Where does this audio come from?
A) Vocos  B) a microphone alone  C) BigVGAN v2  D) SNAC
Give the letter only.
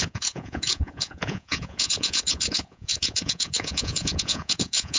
A